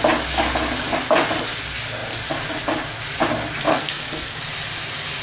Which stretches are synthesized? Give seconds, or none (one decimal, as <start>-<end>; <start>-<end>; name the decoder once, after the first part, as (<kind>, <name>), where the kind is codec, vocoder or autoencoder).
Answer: 3.7-4.4 (codec, SNAC)

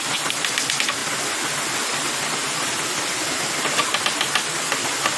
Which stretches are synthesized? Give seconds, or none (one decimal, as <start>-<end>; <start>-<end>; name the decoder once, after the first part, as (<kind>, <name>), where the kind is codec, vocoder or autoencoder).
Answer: none

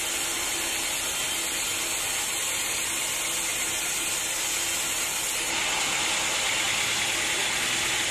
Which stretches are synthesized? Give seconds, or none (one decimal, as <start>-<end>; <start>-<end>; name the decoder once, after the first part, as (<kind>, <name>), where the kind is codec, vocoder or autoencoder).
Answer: none

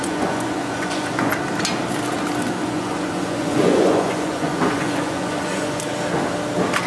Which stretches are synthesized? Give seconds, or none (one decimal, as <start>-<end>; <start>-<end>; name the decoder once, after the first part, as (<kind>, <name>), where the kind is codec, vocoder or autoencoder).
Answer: 0.0-1.3 (vocoder, Vocos); 2.6-5.8

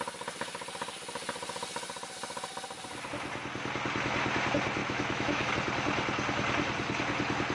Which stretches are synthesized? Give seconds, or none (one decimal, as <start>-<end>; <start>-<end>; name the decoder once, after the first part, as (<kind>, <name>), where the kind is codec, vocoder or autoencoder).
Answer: 4.8-5.5 (autoencoder, DAC-VAE)

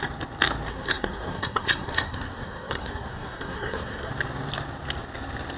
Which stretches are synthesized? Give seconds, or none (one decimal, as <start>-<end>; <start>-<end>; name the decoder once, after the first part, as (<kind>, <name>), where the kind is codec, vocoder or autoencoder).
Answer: 0.7-4.1 (codec, SNAC)